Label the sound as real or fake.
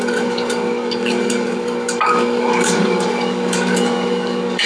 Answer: fake